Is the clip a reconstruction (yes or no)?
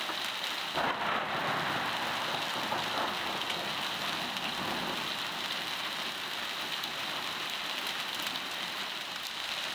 no